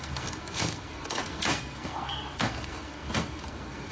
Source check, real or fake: fake